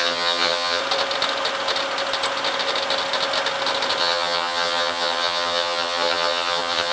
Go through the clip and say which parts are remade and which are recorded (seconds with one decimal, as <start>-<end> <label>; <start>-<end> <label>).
0.0-0.8 remade; 0.8-4.0 recorded; 4.0-6.9 remade